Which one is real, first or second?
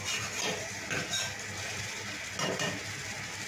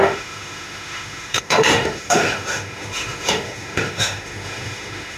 first